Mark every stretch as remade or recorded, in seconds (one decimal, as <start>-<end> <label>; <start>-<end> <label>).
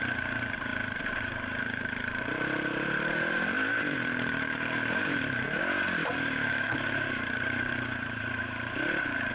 0.0-0.7 recorded; 0.7-5.6 remade; 5.6-6.0 recorded; 6.0-9.3 remade